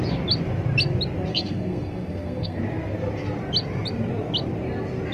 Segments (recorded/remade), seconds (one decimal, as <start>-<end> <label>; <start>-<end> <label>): 0.0-1.3 recorded; 1.3-2.6 remade; 2.6-5.1 recorded

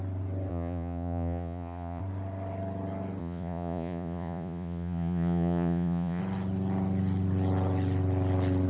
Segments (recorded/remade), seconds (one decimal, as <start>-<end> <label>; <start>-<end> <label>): 0.0-0.5 recorded; 0.5-2.0 remade; 2.0-3.2 recorded; 3.2-6.2 remade; 6.2-8.7 recorded

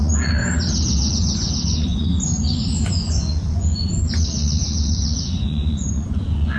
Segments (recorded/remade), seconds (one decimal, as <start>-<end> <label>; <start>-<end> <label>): 0.0-0.4 remade; 0.4-1.1 recorded; 1.1-6.6 remade

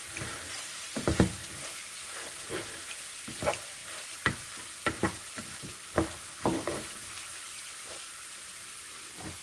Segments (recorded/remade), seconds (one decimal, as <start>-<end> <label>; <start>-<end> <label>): 0.0-1.4 remade; 1.4-2.9 recorded; 2.9-9.4 remade

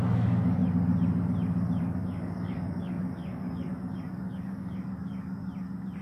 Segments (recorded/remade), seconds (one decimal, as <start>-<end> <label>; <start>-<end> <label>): 0.0-0.6 remade; 0.6-1.8 recorded; 1.8-5.4 remade; 5.4-6.0 recorded

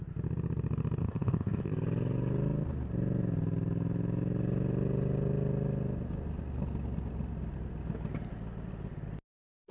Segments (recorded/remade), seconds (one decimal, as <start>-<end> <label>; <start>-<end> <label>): 0.0-1.0 recorded; 1.0-1.7 remade; 1.7-9.7 recorded